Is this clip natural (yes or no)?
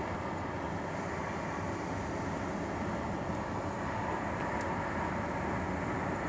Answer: yes